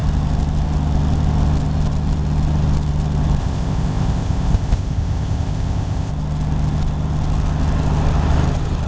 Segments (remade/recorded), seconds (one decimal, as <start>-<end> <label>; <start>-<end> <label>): 0.0-3.4 recorded; 3.4-6.1 remade; 6.1-8.9 recorded